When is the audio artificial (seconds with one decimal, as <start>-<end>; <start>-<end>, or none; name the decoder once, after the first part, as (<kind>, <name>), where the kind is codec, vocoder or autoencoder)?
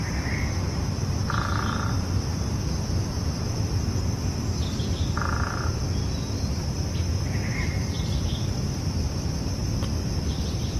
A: 0.0-2.3 (vocoder, BigVGAN v2); 7.5-10.8